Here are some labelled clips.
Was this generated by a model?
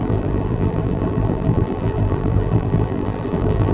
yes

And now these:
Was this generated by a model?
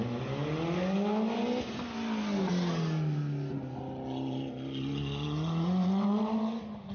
no